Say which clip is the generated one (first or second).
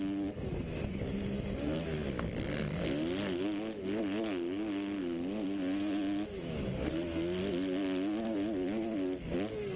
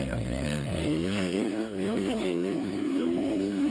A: second